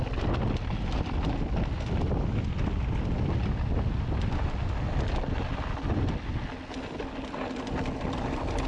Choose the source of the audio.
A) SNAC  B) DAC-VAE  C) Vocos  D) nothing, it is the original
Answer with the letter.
D